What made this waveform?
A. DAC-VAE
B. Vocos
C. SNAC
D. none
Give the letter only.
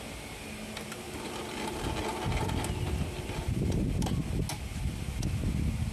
D